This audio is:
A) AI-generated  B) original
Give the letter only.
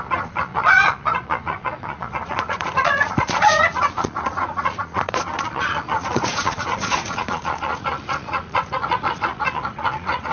A